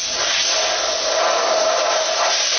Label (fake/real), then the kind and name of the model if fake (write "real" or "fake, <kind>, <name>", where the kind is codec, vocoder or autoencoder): real